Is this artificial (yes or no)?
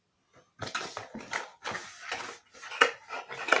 no